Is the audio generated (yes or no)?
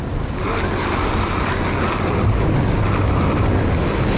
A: no